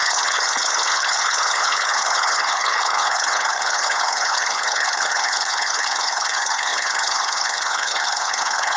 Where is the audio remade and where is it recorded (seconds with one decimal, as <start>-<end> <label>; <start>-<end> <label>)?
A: 0.0-8.8 remade